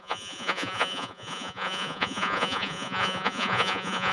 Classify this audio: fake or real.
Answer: fake